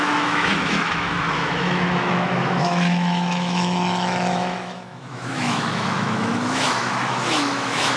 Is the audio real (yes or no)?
no